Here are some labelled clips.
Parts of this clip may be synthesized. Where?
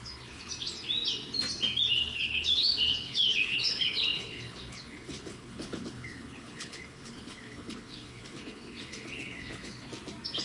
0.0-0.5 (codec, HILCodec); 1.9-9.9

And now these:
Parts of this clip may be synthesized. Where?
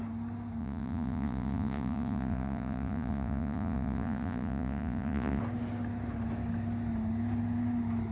0.6-5.4 (vocoder, Vocos)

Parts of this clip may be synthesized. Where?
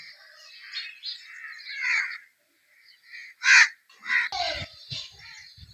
none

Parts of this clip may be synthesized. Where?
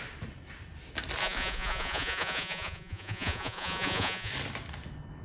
1.2-4.3 (vocoder, Vocos)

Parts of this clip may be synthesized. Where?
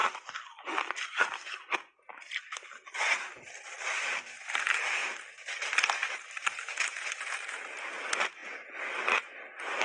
0.0-2.4 (vocoder, BigVGAN v2)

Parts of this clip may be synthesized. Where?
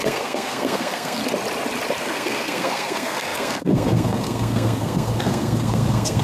0.0-1.2 (codec, SNAC); 2.0-6.2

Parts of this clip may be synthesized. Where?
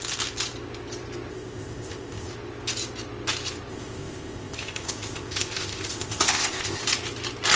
1.3-2.3 (codec, ZipCodec); 3.7-6.8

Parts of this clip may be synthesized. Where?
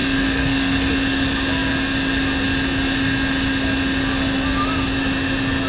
0.0-0.9 (codec, SNAC)